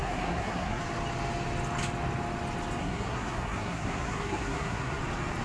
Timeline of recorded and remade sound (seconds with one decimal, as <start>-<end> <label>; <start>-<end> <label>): 0.0-0.8 remade; 0.8-2.8 recorded; 2.8-5.0 remade; 5.0-5.4 recorded